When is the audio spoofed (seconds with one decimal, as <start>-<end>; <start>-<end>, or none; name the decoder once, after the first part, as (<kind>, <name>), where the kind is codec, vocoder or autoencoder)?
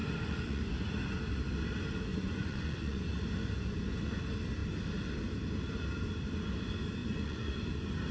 0.0-0.6 (vocoder, Vocos); 2.1-3.0; 7.0-7.6